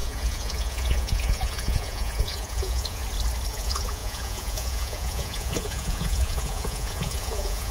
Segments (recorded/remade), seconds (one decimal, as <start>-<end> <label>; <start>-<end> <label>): 0.0-3.0 remade; 3.0-3.5 recorded; 3.5-7.7 remade